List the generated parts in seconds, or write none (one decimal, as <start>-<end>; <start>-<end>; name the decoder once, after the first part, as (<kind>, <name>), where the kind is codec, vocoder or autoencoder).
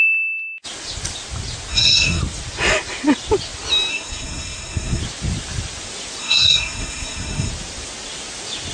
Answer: 1.7-2.2 (codec, SNAC); 3.9-5.0; 6.2-7.5